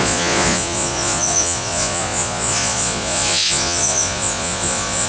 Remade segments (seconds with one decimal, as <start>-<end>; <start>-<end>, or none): 0.0-5.1